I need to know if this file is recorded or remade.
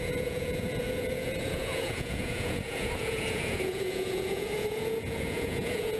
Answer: remade